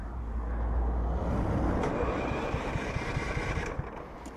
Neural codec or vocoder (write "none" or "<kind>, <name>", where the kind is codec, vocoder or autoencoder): none